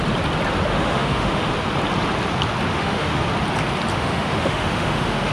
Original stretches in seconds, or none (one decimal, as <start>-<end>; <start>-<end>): 0.0-0.7; 1.5-2.7; 3.2-3.9